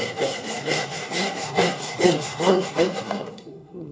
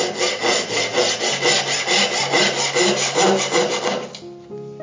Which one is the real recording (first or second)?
second